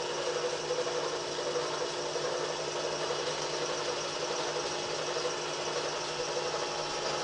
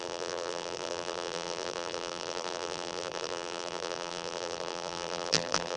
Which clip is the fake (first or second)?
second